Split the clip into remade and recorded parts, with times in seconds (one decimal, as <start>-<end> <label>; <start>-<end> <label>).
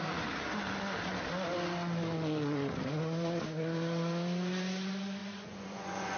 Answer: 0.0-5.2 recorded; 5.2-6.2 remade